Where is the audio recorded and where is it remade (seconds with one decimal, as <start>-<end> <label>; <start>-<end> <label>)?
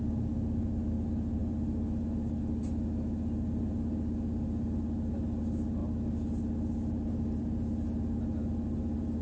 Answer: 0.0-9.2 recorded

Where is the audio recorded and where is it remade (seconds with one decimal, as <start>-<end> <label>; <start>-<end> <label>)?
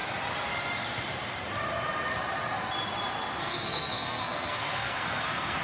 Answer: 0.0-3.4 recorded; 3.4-5.6 remade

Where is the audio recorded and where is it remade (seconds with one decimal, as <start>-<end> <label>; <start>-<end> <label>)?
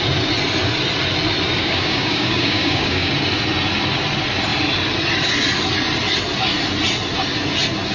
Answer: 0.0-1.6 recorded; 1.6-3.1 remade; 3.1-7.9 recorded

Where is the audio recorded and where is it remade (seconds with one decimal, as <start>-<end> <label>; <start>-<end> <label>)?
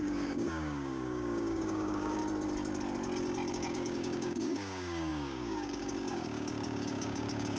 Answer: 0.0-2.2 remade; 2.2-3.5 recorded; 3.5-7.6 remade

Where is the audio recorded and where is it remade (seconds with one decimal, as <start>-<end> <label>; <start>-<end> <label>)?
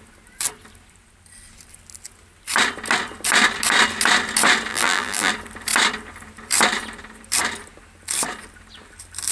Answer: 0.0-4.7 recorded; 4.7-5.3 remade; 5.3-9.3 recorded